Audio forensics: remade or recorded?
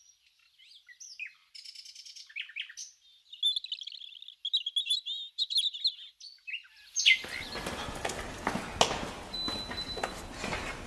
recorded